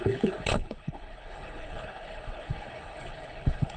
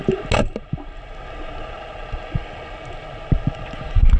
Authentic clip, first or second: second